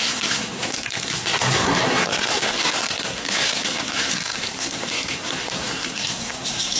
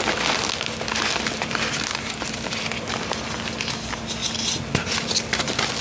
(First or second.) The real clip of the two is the second